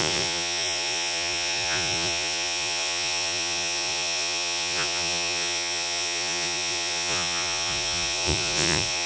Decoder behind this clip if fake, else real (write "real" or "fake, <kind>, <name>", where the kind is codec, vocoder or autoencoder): fake, vocoder, Vocos